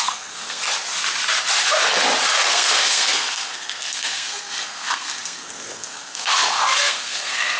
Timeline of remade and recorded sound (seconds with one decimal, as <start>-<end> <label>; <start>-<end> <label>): 0.0-0.6 remade; 0.6-2.5 recorded; 2.5-7.6 remade